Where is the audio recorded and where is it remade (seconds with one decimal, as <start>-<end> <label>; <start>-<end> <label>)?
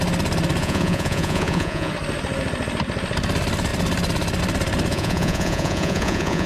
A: 0.0-0.6 recorded; 0.6-1.9 remade; 1.9-4.9 recorded; 4.9-6.5 remade